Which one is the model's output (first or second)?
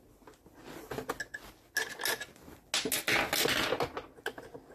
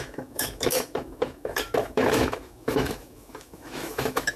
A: second